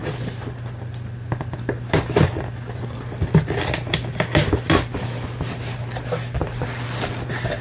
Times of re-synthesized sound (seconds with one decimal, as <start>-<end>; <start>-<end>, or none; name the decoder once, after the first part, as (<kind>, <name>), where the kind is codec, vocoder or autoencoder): 0.0-7.6 (vocoder, BigVGAN v2)